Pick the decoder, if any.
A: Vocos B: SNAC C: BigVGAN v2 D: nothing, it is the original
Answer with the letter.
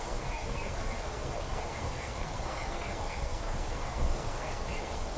B